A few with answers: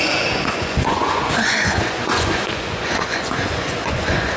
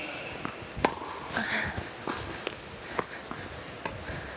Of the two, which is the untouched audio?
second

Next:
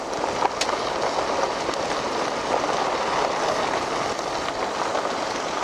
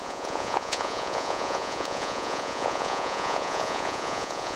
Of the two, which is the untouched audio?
first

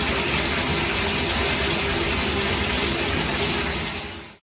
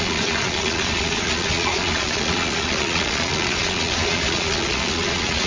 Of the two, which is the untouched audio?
first